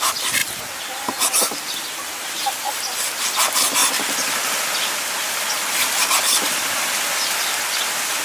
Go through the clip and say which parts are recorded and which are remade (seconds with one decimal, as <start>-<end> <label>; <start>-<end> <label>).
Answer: 0.0-8.2 recorded